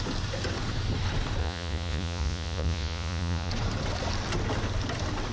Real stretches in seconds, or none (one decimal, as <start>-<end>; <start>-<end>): 0.0-1.4; 3.5-5.3